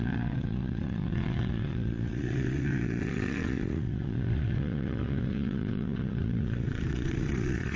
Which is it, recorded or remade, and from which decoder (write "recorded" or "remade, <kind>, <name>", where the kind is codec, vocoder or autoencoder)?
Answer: remade, vocoder, WaveNeXt